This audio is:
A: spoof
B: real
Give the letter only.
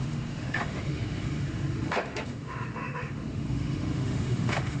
A